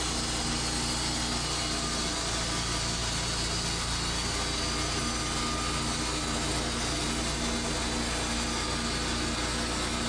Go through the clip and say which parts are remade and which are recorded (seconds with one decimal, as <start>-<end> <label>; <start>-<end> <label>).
0.0-10.1 recorded